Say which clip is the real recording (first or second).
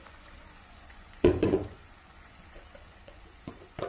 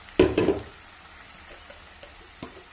second